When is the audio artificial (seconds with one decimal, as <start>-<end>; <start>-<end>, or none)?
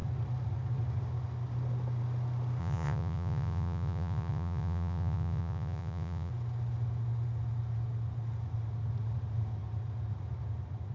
2.6-6.3